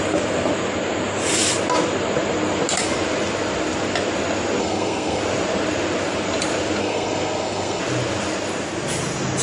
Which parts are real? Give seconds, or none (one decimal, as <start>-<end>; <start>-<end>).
0.0-4.6; 5.2-6.8; 7.8-9.4